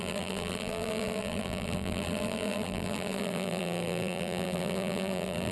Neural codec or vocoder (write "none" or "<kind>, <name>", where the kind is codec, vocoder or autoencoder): vocoder, BigVGAN v2